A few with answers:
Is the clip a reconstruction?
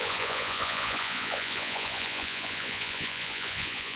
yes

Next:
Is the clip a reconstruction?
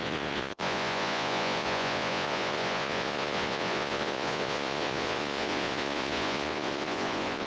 yes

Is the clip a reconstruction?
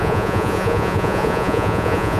yes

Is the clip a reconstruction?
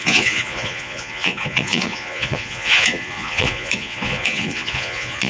yes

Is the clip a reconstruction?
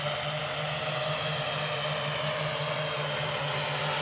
no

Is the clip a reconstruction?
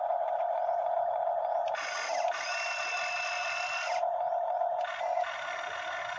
no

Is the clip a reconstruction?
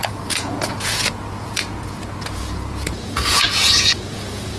yes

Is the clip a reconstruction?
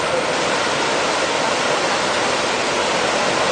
no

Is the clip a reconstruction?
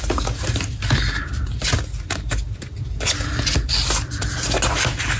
no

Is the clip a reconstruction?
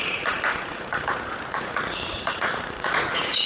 yes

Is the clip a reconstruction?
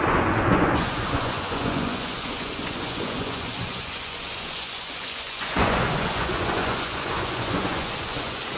yes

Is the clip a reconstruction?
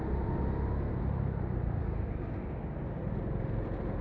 no